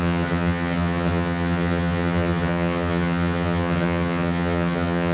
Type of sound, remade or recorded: remade